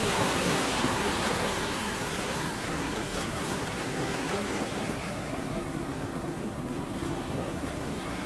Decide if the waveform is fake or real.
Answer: fake